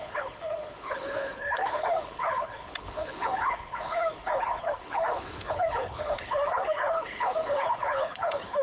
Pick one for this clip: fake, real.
fake